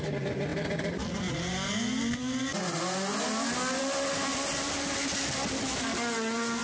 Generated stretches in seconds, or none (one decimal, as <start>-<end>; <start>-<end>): none